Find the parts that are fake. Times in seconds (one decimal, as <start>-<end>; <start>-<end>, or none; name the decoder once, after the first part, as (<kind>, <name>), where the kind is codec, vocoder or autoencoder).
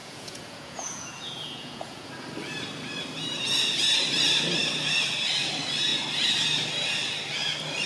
0.0-2.1 (vocoder, Vocos)